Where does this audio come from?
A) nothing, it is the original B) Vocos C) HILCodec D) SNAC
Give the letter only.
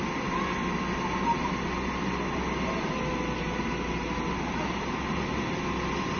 A